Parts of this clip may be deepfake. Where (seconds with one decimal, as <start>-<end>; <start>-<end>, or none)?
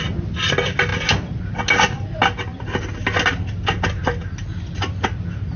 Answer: none